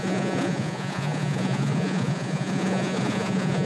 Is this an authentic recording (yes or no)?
no